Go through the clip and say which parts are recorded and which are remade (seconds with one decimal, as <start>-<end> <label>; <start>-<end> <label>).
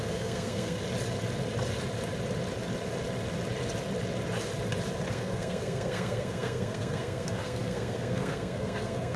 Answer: 0.0-0.8 remade; 0.8-5.1 recorded; 5.1-9.2 remade